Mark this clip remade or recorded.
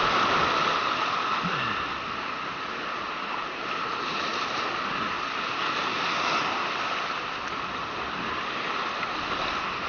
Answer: recorded